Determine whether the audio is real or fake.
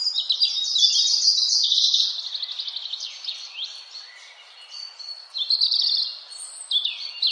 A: real